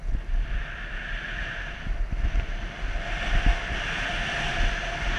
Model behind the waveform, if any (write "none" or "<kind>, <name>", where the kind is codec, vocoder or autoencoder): none